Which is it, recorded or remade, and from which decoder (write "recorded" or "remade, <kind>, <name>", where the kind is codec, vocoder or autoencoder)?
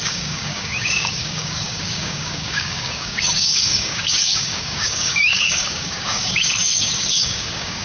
remade, codec, DAC